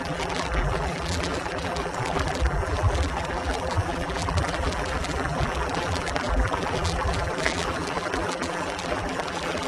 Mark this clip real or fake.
fake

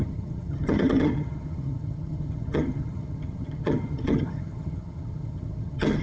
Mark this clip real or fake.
fake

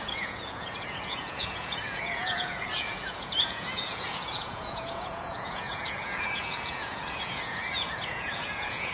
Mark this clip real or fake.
fake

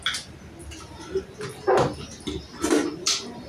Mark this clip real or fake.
real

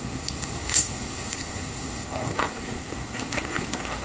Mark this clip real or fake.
fake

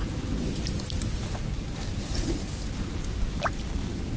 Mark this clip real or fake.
real